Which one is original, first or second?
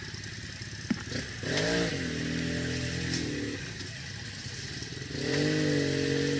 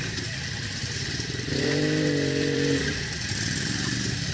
first